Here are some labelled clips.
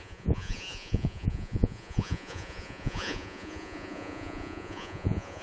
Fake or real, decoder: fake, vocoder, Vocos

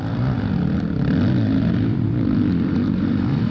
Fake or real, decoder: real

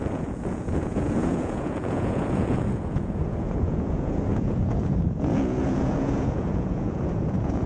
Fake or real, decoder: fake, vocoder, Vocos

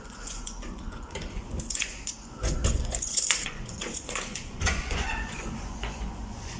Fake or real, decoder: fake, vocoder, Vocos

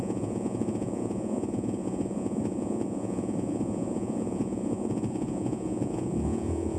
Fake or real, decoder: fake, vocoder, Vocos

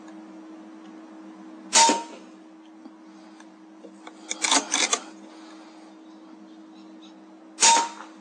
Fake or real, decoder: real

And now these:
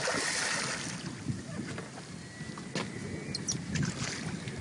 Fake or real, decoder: real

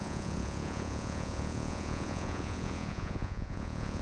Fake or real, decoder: fake, vocoder, Vocos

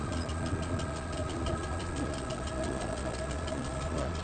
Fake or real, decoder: fake, vocoder, Vocos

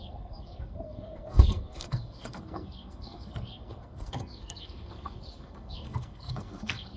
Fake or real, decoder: fake, codec, SNAC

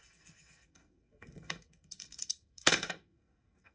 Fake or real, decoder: fake, codec, SNAC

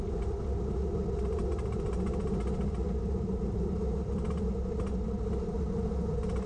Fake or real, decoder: real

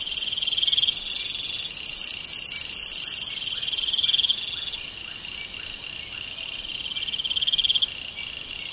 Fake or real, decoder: real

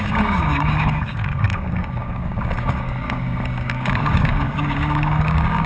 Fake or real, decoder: fake, codec, DAC